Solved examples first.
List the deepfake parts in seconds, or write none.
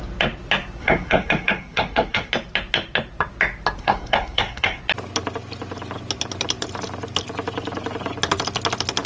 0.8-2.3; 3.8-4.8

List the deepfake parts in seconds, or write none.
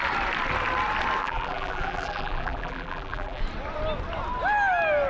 1.2-3.4